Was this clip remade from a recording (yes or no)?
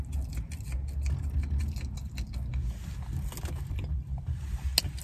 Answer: no